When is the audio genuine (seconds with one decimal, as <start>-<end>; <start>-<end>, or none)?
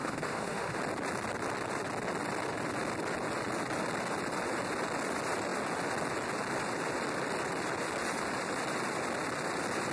0.8-9.9